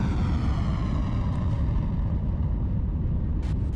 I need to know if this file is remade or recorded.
recorded